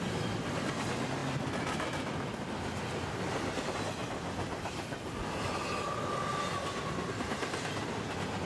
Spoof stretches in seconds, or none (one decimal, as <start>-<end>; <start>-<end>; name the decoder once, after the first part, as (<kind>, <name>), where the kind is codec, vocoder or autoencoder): none